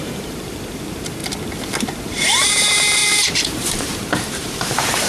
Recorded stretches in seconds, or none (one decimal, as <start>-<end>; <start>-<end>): 1.2-2.0